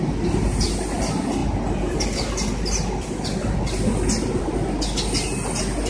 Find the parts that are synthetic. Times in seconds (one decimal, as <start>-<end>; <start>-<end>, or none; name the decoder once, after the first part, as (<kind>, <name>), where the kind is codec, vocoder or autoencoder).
none